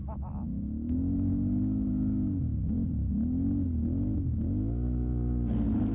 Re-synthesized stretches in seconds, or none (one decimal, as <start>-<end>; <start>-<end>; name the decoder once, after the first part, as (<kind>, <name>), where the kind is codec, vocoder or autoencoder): none